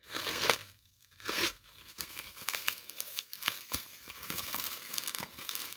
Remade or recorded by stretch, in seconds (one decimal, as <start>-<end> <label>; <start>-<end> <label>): 0.0-5.8 remade

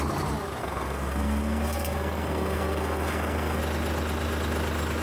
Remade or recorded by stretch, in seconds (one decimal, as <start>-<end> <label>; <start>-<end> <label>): 0.0-0.6 recorded; 0.6-3.6 remade; 3.6-5.0 recorded

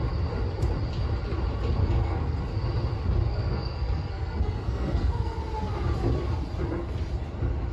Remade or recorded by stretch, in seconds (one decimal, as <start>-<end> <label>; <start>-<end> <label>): 0.0-1.8 recorded; 1.8-2.4 remade; 2.4-3.3 recorded; 3.3-5.4 remade; 5.4-7.7 recorded

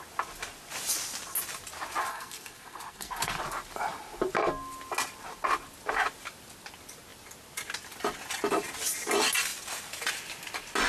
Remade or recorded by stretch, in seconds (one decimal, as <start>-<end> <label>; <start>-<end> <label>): 0.0-2.1 recorded; 2.1-3.4 remade; 3.4-10.9 recorded